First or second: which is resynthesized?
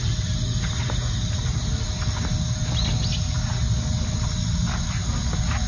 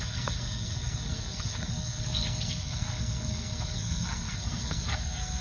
second